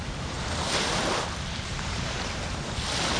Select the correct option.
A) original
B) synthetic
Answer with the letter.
A